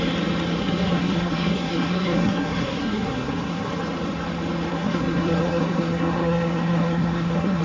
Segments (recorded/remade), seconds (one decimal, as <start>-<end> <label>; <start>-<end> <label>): 0.0-0.6 recorded; 0.6-3.7 remade; 3.7-4.7 recorded; 4.7-7.6 remade